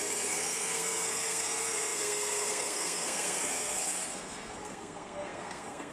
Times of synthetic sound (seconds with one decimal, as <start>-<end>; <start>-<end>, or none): 0.0-5.9